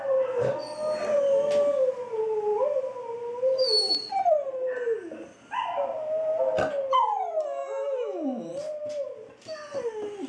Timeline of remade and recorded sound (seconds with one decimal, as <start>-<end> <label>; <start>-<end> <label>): 0.0-7.6 recorded; 7.6-8.5 remade; 8.5-10.3 recorded